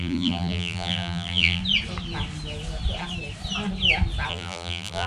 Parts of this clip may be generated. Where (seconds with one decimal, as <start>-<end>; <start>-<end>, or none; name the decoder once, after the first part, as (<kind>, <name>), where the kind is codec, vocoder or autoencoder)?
0.0-1.6 (vocoder, BigVGAN v2); 4.3-5.1